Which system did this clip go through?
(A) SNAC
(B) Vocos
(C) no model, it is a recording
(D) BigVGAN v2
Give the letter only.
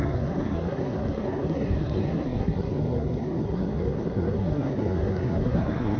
A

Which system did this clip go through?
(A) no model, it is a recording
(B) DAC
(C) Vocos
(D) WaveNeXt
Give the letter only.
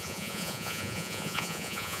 C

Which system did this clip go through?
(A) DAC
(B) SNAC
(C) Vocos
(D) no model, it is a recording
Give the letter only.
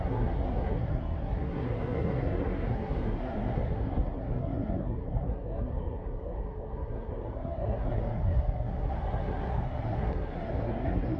B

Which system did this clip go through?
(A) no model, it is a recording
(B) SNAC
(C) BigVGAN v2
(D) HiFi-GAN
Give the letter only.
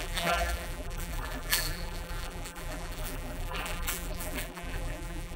C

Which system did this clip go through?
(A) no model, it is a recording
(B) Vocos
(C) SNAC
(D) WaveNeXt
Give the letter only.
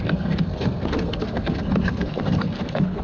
C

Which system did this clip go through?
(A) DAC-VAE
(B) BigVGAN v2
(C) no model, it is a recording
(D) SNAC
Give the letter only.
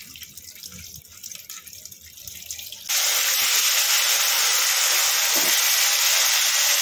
C